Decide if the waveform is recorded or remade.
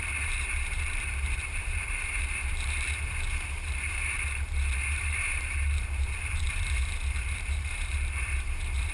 remade